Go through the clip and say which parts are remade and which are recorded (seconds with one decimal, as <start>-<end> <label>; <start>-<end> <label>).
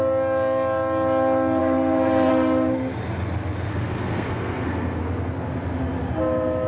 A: 0.0-1.6 recorded; 1.6-2.3 remade; 2.3-3.7 recorded; 3.7-5.0 remade; 5.0-6.7 recorded